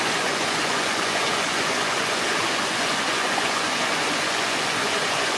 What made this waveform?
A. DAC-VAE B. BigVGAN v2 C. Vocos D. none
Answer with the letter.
C